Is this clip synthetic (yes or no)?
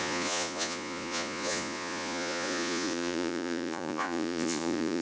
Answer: yes